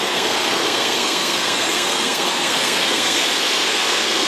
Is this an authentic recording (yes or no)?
no